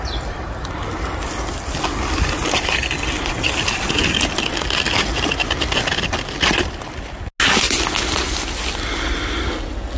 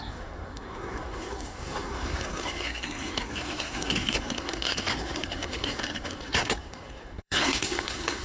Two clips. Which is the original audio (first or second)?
first